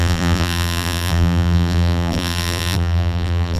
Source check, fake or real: fake